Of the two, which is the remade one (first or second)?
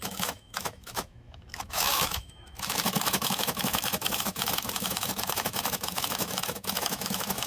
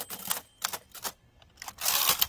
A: first